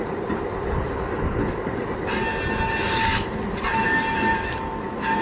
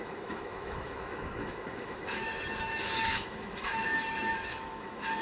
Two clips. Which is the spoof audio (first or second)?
second